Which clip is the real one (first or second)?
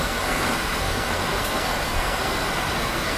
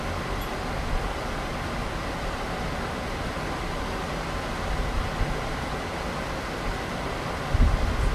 second